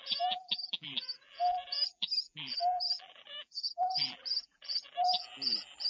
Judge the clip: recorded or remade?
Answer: remade